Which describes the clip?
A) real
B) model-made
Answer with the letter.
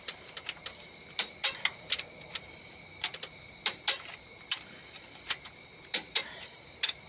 B